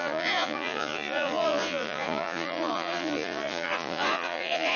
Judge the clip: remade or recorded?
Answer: remade